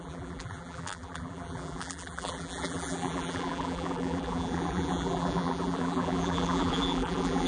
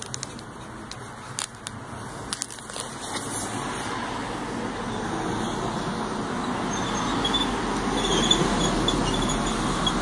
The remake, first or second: first